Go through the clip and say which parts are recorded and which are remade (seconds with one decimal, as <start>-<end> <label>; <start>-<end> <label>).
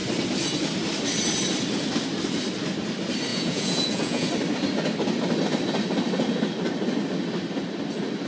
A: 0.0-3.3 recorded; 3.3-4.3 remade; 4.3-8.3 recorded